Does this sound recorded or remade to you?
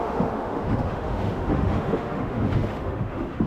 remade